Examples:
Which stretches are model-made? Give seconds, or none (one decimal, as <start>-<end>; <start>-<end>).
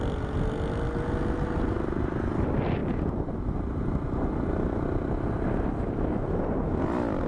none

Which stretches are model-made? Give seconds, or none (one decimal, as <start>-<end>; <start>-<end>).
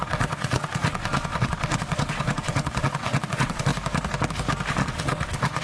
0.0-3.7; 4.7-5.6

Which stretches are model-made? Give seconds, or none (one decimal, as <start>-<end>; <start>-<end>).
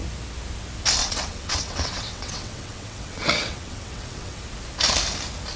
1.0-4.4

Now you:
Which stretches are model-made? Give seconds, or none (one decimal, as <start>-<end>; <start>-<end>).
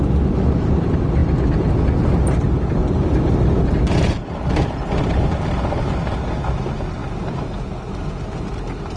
none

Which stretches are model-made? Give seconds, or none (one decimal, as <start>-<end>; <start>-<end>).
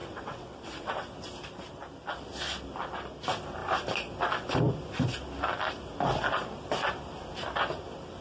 0.0-0.9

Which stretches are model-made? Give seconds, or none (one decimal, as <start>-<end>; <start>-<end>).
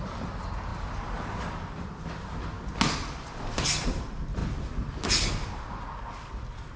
none